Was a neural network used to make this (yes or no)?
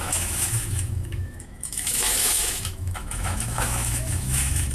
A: yes